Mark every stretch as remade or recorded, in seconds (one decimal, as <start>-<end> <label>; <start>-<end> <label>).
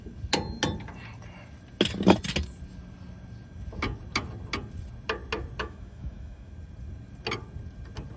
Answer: 0.0-5.6 recorded; 5.6-6.5 remade; 6.5-8.2 recorded